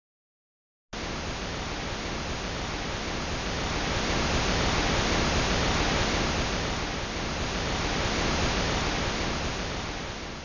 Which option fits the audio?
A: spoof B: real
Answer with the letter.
B